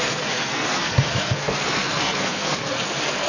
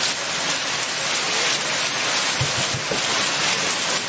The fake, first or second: first